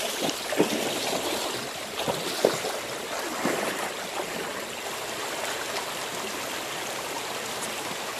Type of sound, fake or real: real